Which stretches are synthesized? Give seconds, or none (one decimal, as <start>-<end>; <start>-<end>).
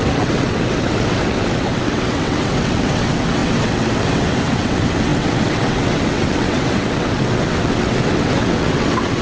0.0-9.2